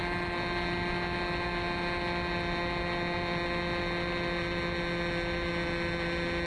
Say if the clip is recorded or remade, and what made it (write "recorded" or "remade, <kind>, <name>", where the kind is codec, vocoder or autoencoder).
recorded